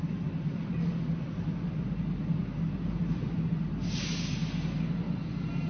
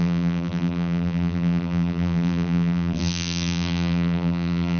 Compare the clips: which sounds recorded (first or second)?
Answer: first